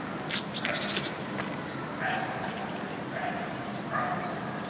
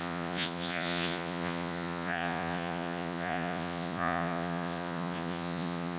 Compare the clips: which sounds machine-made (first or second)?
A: second